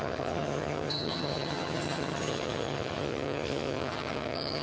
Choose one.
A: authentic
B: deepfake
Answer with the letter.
B